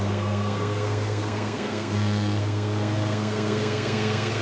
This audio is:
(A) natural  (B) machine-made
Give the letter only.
B